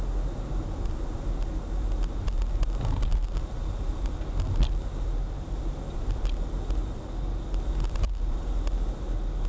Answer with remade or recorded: recorded